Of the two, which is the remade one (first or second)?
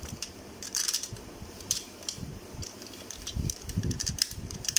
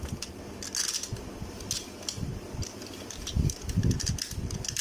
first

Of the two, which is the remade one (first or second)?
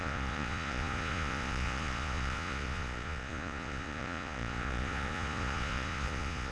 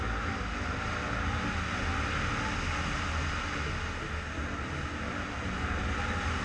first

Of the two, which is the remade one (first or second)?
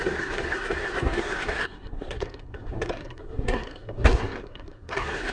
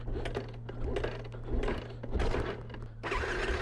first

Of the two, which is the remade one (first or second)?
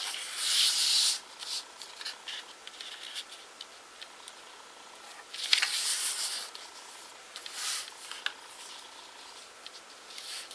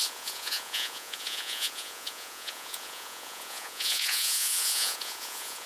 second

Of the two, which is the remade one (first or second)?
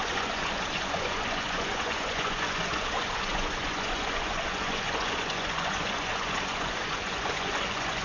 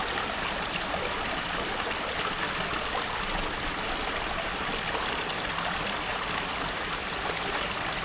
first